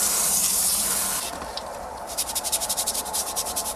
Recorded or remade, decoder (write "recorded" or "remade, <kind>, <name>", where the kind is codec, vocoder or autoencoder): remade, vocoder, BigVGAN v2